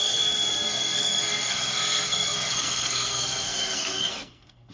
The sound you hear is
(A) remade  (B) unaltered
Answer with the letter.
A